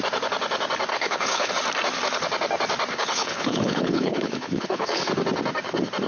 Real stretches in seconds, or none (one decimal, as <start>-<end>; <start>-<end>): 0.0-0.9; 1.5-2.9; 5.0-6.1